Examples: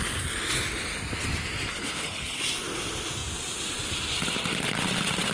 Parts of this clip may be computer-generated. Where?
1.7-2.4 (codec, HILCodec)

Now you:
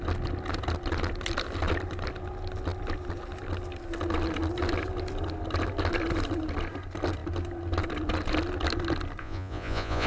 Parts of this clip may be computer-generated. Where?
9.2-10.1 (vocoder, Vocos)